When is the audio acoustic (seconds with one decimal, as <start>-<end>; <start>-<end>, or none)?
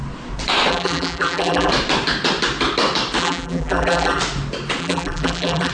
0.0-0.7; 1.7-3.2; 4.2-4.8